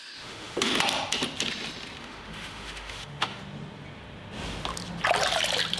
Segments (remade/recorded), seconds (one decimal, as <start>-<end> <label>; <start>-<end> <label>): 0.0-0.7 remade; 0.7-2.0 recorded; 2.0-3.4 remade; 3.4-5.8 recorded